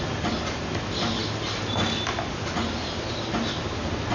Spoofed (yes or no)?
no